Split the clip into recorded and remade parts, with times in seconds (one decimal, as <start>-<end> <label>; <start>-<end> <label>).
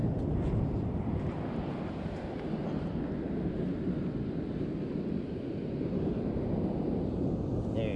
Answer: 0.0-1.7 remade; 1.7-8.0 recorded